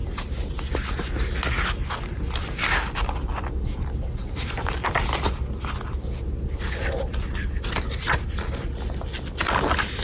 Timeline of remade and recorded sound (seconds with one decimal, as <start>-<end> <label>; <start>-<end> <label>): 0.0-10.0 recorded